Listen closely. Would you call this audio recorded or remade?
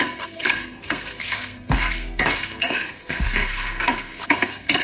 remade